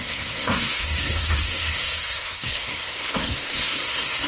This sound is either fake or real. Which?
fake